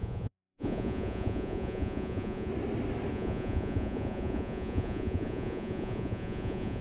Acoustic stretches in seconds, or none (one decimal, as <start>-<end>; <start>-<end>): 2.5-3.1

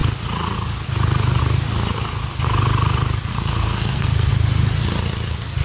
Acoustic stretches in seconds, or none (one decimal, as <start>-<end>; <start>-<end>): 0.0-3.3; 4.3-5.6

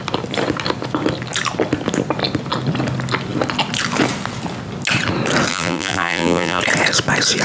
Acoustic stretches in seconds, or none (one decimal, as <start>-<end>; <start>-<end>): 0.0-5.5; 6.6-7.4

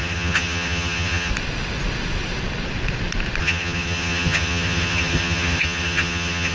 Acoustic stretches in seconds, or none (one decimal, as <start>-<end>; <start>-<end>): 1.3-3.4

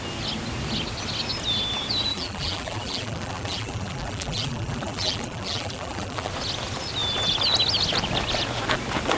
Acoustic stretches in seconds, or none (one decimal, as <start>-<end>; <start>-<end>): 0.0-2.1; 6.3-9.2

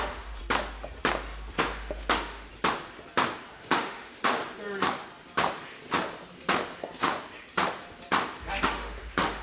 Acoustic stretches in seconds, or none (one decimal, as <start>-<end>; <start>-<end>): 0.4-1.6; 2.5-3.5; 4.4-8.5